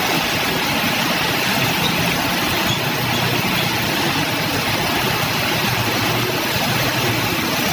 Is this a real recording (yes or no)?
yes